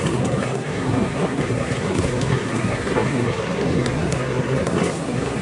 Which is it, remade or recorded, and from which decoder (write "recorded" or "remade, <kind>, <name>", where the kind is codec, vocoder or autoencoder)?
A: remade, codec, SNAC